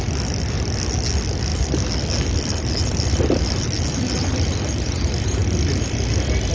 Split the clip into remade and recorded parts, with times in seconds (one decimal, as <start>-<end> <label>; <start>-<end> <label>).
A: 0.0-6.5 recorded